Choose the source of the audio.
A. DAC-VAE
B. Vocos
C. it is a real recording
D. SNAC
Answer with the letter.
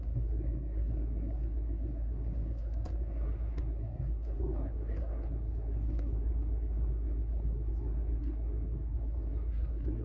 D